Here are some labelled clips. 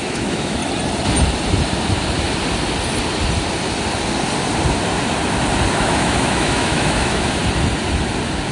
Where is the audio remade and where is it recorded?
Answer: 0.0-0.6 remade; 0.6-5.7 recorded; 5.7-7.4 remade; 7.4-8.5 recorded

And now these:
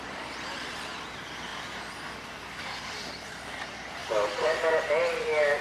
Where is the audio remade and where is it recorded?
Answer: 0.0-5.6 recorded

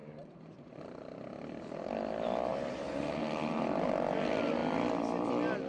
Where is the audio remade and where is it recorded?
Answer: 0.0-0.8 remade; 0.8-2.5 recorded; 2.5-3.2 remade; 3.2-5.7 recorded

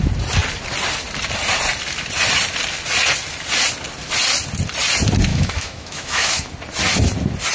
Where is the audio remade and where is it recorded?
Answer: 0.0-5.3 recorded; 5.3-6.5 remade; 6.5-7.5 recorded

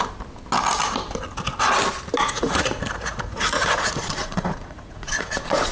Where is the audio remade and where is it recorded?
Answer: 0.0-2.2 recorded; 2.2-5.7 remade

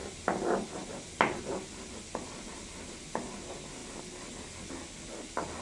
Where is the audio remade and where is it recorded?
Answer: 0.0-5.6 recorded

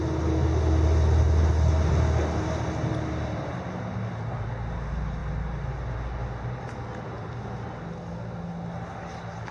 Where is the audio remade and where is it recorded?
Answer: 0.0-9.5 recorded

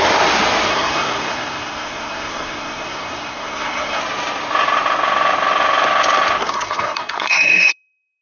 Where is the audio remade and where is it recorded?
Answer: 0.0-0.7 recorded; 0.7-4.0 remade; 4.0-6.4 recorded; 6.4-8.2 remade